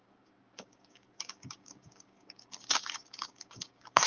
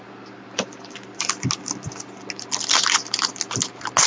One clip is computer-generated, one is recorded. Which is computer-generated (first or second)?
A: first